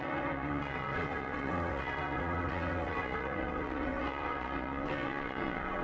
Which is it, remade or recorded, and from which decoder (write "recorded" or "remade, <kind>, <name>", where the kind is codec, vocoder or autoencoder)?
remade, vocoder, WaveNeXt